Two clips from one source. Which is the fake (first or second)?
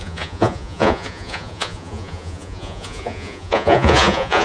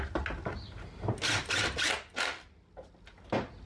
first